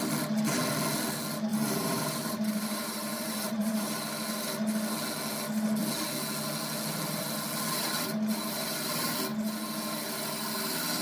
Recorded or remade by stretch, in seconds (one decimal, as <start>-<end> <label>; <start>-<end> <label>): 0.0-1.5 recorded; 1.5-4.0 remade; 4.0-11.0 recorded